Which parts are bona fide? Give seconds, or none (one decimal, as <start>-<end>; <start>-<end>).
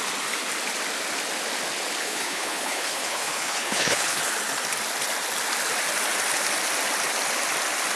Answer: 0.0-2.0; 4.2-8.0